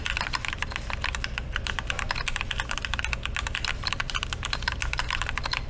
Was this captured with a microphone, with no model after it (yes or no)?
yes